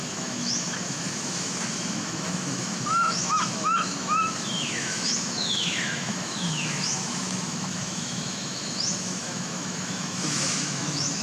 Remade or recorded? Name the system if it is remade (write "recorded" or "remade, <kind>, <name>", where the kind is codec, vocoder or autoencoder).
remade, autoencoder, DAC-VAE